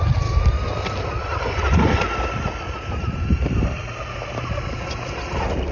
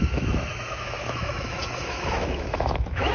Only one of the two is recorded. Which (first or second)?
first